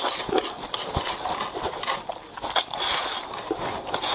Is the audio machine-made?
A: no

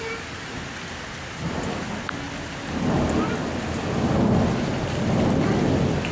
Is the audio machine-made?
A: no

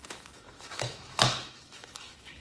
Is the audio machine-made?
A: yes